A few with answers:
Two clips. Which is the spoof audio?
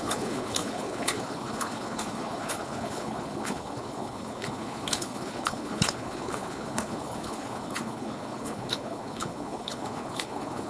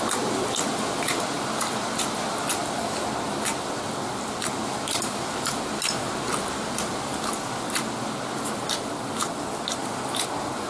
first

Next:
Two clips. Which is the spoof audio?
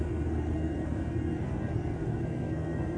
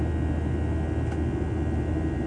first